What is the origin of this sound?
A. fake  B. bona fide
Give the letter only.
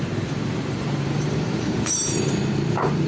A